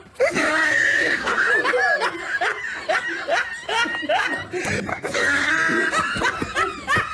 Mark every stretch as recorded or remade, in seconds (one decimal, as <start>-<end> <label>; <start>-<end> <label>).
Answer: 0.0-0.5 recorded; 0.5-1.5 remade; 1.5-4.9 recorded; 4.9-5.5 remade; 5.5-7.1 recorded

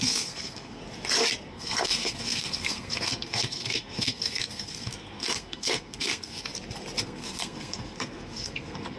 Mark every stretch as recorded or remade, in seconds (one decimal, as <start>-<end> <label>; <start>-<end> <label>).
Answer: 0.0-0.8 remade; 0.8-1.5 recorded; 1.5-6.5 remade; 6.5-7.0 recorded; 7.0-9.0 remade

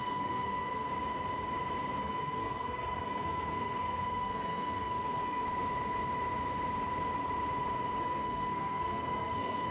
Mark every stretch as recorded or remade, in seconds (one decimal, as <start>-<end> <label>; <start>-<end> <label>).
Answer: 0.0-0.9 remade; 0.9-2.0 recorded; 2.0-5.4 remade; 5.4-8.0 recorded; 8.0-9.7 remade

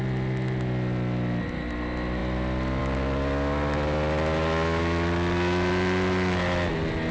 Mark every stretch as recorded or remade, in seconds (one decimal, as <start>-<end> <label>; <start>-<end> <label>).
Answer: 0.0-7.1 recorded